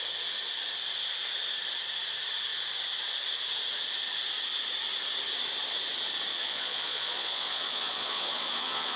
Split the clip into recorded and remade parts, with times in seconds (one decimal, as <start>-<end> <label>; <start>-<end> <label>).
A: 0.0-6.3 recorded; 6.3-9.0 remade